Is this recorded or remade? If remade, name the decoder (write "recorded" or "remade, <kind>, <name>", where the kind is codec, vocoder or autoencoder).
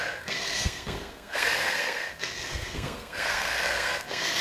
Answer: remade, codec, SNAC